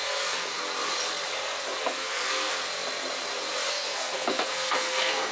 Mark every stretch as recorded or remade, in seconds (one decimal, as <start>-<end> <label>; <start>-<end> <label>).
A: 0.0-0.6 remade; 0.6-1.8 recorded; 1.8-2.5 remade; 2.5-3.7 recorded; 3.7-5.3 remade